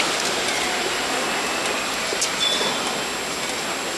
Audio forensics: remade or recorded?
recorded